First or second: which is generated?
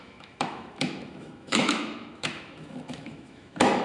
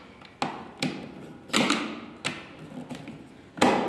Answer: first